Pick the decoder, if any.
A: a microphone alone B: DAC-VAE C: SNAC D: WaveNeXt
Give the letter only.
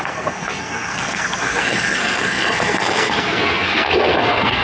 C